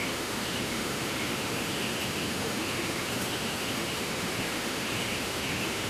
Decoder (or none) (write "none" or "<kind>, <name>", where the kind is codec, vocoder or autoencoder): autoencoder, DAC-VAE